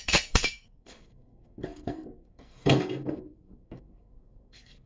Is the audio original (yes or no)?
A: no